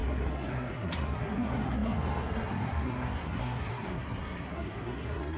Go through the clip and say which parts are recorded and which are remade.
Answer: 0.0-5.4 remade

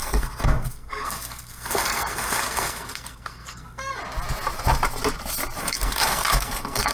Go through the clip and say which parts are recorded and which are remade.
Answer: 0.0-4.0 remade; 4.0-5.6 recorded; 5.6-6.9 remade

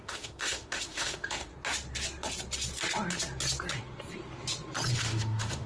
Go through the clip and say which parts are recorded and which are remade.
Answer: 0.0-1.5 remade; 1.5-4.9 recorded; 4.9-5.7 remade